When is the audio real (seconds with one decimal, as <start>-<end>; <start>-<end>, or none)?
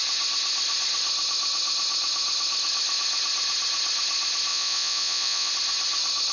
0.0-4.5; 5.5-6.3